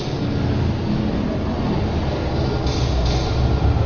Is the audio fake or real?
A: real